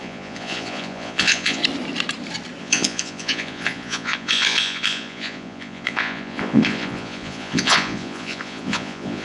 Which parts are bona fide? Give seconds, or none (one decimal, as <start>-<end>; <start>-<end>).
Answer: 1.6-2.6